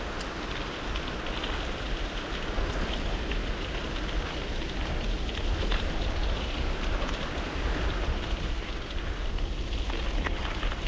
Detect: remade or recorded recorded